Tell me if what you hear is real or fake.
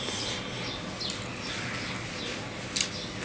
real